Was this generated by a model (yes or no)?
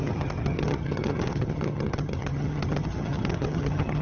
yes